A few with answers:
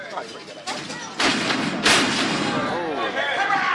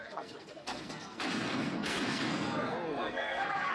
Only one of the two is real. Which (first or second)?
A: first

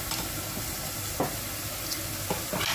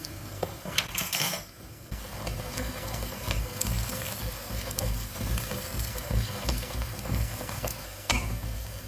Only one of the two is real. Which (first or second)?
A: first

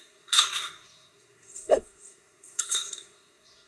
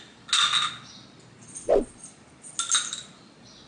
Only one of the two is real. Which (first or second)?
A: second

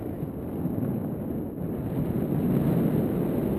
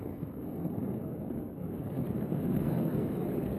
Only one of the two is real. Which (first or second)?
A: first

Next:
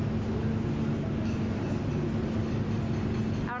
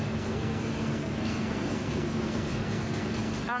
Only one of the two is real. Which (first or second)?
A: first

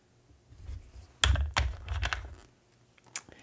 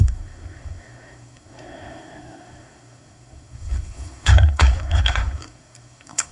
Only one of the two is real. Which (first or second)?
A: first